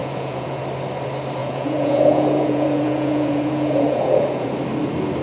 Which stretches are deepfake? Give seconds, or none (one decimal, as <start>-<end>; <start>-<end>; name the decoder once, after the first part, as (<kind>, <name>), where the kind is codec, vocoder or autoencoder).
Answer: 0.0-0.6 (vocoder, Vocos); 1.4-4.5